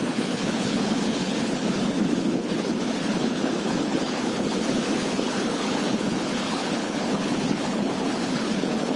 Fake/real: fake